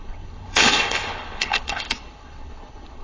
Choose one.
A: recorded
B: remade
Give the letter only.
B